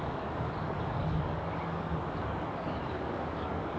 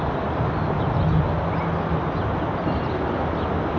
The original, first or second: second